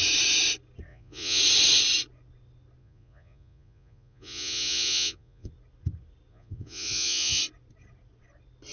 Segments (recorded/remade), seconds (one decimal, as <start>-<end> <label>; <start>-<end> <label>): 0.0-0.9 recorded; 0.9-1.4 remade; 1.4-2.8 recorded; 2.8-5.5 remade; 5.5-6.3 recorded; 6.3-7.4 remade; 7.4-8.7 recorded